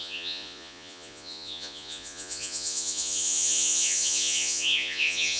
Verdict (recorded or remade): remade